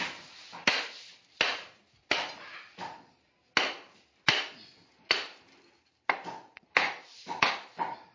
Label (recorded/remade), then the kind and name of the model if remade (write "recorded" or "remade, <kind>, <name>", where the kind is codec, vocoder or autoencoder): recorded